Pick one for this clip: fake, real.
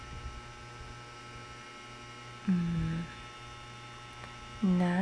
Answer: real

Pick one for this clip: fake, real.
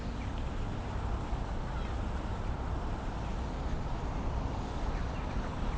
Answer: real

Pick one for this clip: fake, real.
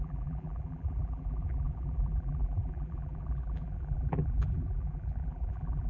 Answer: fake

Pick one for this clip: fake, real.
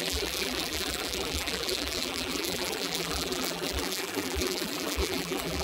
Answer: fake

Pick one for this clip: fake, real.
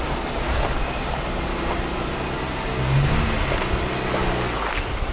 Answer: real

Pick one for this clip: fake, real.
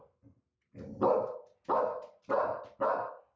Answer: real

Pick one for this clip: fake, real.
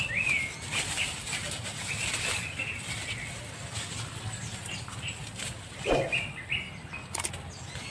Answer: real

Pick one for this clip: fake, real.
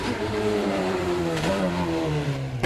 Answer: fake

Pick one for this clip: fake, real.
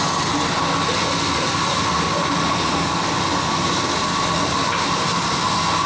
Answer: real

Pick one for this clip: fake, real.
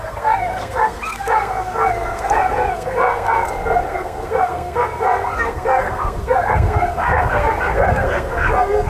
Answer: fake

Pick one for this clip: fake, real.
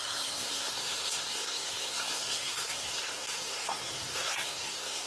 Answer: fake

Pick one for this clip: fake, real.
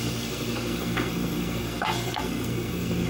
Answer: fake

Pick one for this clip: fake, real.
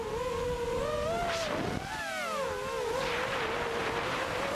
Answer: real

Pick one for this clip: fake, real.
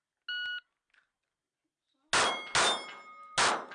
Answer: real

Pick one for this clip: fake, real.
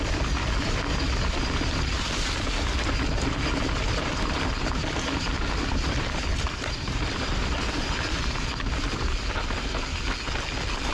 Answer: real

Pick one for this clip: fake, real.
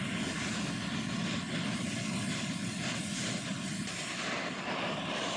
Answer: real